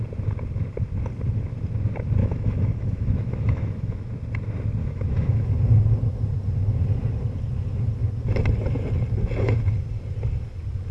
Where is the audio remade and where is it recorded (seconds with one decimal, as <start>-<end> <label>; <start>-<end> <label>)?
0.0-2.2 recorded; 2.2-4.1 remade; 4.1-4.8 recorded; 4.8-5.5 remade; 5.5-10.9 recorded